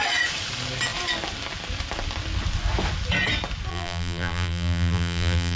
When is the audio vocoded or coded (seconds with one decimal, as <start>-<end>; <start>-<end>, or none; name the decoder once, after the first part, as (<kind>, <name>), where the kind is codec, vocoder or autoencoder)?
3.7-5.6 (vocoder, BigVGAN v2)